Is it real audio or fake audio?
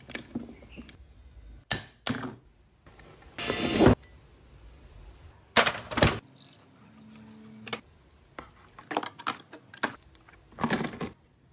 real